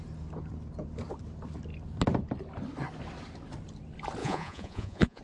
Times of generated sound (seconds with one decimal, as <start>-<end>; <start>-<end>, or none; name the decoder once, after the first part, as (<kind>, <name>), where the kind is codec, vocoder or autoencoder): 4.2-5.2 (vocoder, Vocos)